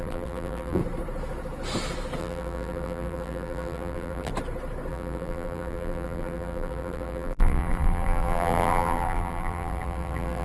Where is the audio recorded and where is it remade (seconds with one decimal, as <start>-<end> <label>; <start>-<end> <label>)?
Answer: 0.0-0.8 remade; 0.8-2.2 recorded; 2.2-4.3 remade; 4.3-4.9 recorded; 4.9-10.4 remade